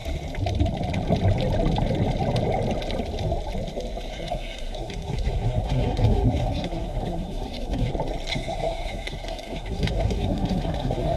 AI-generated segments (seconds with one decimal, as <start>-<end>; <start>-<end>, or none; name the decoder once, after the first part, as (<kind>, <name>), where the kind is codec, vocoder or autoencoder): 4.1-7.9 (codec, SNAC); 8.3-11.2